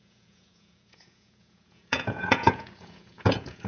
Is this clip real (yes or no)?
no